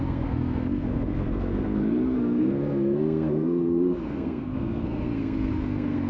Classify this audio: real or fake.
fake